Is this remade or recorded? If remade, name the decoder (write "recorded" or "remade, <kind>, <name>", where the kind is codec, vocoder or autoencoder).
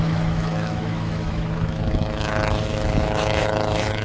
remade, autoencoder, DAC-VAE